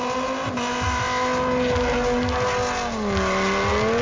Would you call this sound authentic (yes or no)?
yes